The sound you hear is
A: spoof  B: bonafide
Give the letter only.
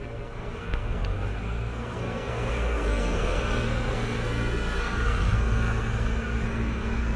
A